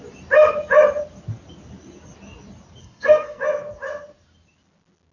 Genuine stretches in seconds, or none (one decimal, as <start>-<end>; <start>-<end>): 0.0-2.8; 3.4-5.1